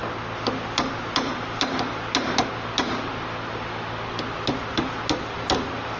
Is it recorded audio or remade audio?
recorded